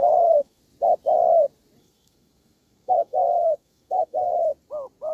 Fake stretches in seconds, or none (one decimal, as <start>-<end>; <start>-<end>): 0.0-0.6; 1.8-4.3